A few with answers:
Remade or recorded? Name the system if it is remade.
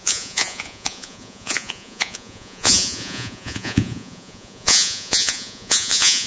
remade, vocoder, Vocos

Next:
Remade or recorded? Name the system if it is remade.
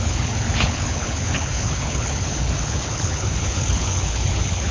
remade, codec, HILCodec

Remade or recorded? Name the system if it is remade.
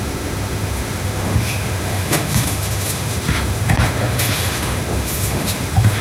remade, autoencoder, DAC-VAE